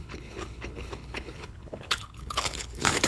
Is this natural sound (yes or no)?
no